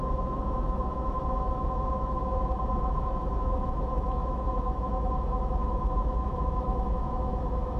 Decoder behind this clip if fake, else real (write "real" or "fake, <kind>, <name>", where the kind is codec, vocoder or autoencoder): fake, autoencoder, DAC-VAE